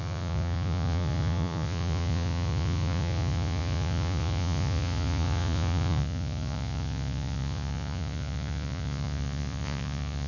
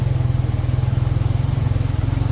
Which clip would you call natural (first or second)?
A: second